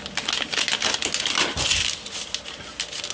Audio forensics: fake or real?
real